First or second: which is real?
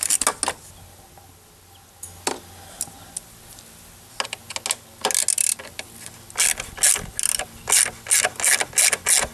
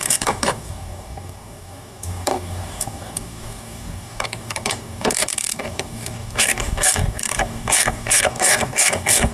first